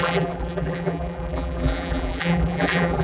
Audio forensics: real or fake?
fake